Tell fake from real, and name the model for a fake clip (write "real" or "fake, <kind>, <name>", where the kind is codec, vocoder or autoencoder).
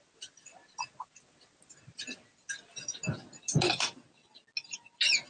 real